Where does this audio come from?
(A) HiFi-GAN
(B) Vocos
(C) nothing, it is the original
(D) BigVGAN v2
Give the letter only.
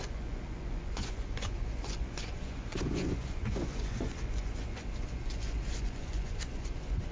B